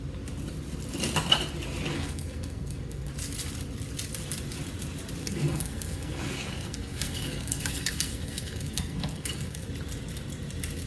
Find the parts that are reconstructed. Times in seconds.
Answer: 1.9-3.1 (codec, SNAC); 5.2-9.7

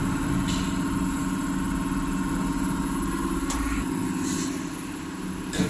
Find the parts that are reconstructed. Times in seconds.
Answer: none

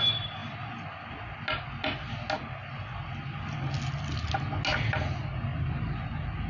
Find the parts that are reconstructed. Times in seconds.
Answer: none

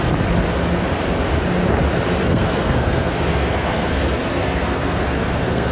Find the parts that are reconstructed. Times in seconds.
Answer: 2.2-5.7 (codec, SNAC)